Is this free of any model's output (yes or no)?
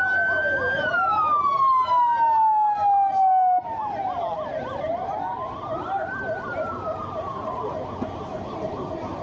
yes